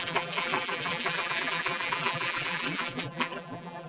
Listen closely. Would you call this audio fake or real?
fake